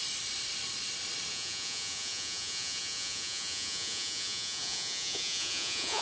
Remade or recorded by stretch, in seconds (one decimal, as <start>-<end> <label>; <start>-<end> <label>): 0.0-1.3 recorded; 1.3-6.0 remade